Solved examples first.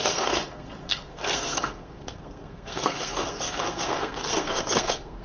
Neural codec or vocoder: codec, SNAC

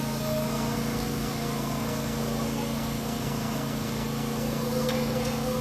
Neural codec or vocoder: codec, SNAC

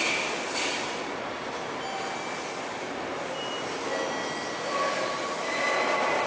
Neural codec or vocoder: none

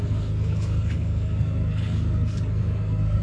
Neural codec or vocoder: codec, SNAC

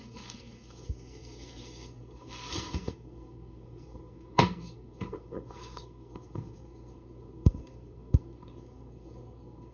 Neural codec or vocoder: codec, SNAC